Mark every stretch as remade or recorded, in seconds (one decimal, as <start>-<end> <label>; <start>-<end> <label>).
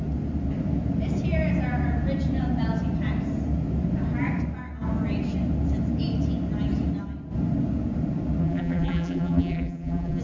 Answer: 0.0-8.4 recorded; 8.4-10.2 remade